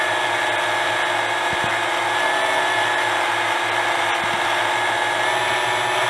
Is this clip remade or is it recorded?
recorded